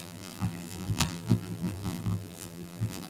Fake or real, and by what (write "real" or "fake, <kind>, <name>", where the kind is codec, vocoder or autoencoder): fake, vocoder, BigVGAN v2